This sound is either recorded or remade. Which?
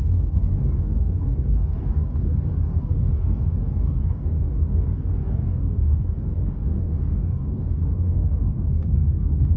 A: remade